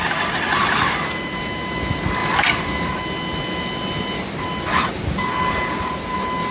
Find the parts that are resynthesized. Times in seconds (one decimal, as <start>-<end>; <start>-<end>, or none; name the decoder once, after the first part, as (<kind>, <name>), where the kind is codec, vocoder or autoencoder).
none